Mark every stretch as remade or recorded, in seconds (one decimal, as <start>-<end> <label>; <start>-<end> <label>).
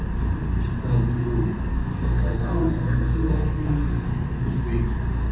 0.0-1.7 recorded; 1.7-4.4 remade; 4.4-5.3 recorded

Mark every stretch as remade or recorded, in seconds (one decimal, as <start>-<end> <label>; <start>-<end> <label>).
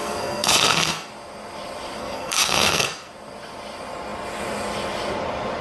0.0-1.1 remade; 1.1-2.0 recorded; 2.0-3.1 remade; 3.1-5.6 recorded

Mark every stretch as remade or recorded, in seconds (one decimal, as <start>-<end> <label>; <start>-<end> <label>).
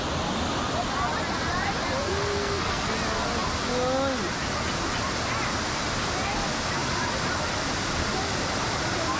0.0-2.0 recorded; 2.0-2.9 remade; 2.9-9.2 recorded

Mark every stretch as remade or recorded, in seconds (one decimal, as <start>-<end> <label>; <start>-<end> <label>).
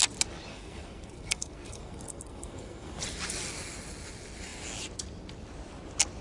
0.0-0.5 recorded; 0.5-3.0 remade; 3.0-6.2 recorded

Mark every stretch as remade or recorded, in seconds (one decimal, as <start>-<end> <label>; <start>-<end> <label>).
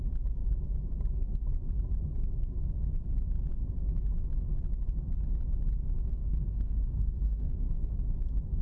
0.0-6.1 recorded; 6.1-7.9 remade; 7.9-8.6 recorded